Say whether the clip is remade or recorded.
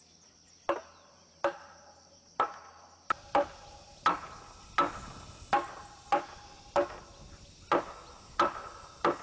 recorded